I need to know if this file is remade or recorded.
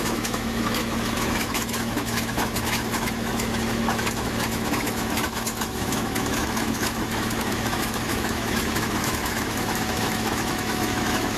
remade